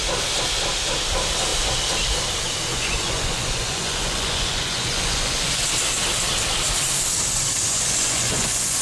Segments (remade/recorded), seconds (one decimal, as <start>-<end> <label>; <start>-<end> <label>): 0.0-2.7 recorded; 2.7-5.6 remade; 5.6-7.7 recorded; 7.7-8.8 remade